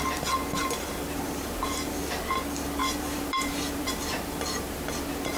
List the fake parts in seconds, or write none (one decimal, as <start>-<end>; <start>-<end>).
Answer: 0.6-2.2; 2.8-4.8